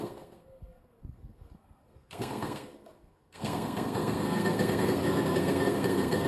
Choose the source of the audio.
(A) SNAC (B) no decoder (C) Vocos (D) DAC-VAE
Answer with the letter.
A